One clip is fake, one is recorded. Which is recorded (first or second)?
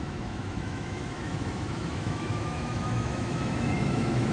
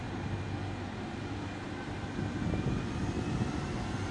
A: second